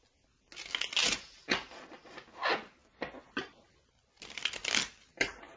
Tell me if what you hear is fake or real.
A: real